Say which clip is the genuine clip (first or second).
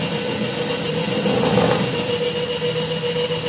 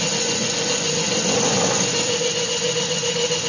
first